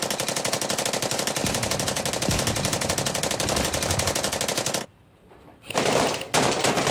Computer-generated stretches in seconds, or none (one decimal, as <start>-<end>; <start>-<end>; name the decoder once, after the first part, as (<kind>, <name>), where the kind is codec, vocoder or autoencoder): none